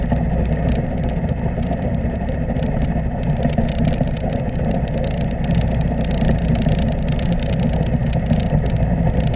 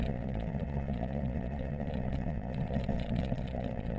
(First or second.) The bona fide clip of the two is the first